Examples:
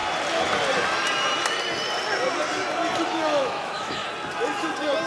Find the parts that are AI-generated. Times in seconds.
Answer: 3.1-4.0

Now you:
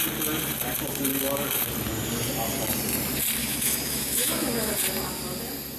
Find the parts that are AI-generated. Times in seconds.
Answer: 3.4-4.7

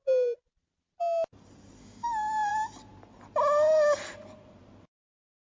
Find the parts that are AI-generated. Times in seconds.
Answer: 1.8-2.5

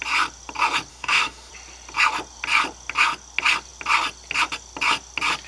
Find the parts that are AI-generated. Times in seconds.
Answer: 0.9-1.5

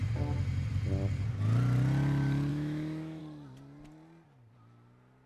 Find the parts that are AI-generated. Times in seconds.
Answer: 2.5-3.2

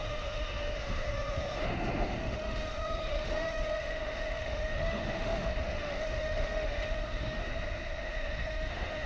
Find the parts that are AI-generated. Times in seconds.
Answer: 0.0-7.4; 8.0-9.1